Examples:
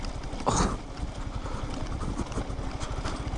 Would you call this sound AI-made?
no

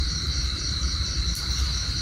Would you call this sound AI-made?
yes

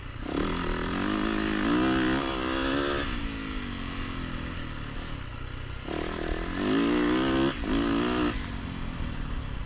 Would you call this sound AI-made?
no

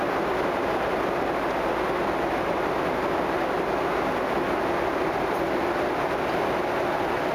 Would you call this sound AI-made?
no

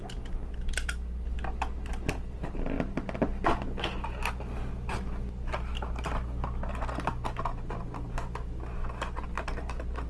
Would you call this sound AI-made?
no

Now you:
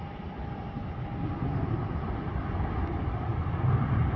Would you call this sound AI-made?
no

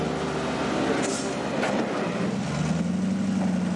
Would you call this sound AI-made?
no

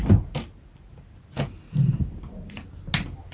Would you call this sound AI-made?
no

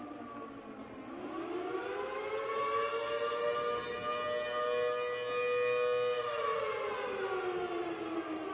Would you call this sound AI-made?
no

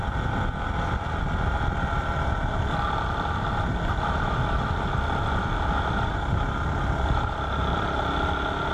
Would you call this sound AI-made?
no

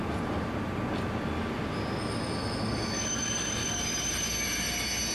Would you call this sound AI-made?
no